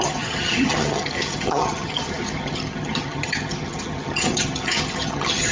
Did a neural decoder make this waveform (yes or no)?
yes